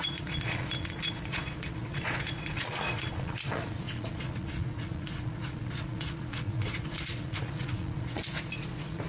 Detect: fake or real fake